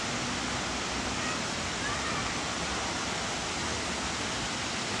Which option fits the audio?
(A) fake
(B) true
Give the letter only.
B